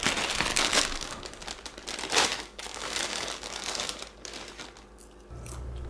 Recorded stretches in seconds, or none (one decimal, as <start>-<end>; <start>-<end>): 0.0-0.5; 1.2-2.3; 4.0-5.9